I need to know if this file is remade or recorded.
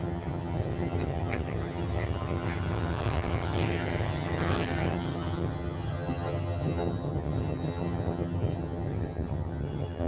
remade